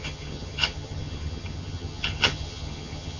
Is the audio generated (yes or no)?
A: yes